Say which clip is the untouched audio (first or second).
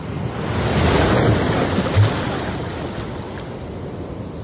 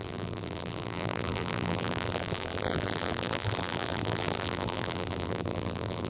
first